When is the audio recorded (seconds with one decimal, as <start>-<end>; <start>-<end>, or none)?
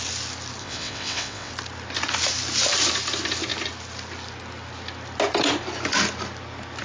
0.0-0.6; 1.5-6.8